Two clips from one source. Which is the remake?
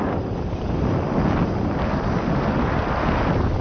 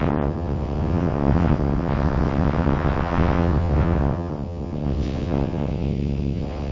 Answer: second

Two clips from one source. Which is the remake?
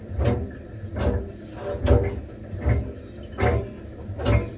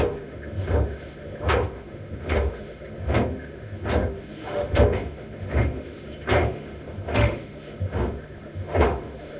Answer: second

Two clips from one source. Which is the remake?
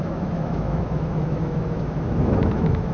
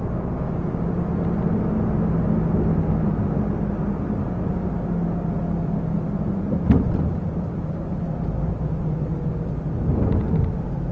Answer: first